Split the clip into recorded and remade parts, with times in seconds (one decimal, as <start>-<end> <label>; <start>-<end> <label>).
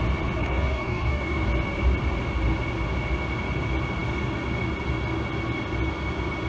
0.0-0.4 recorded; 0.4-1.5 remade; 1.5-6.5 recorded